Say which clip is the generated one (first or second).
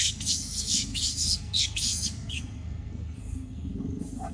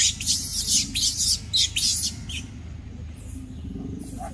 first